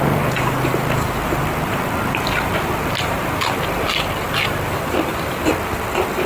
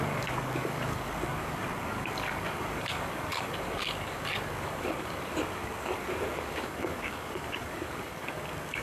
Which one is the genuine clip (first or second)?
first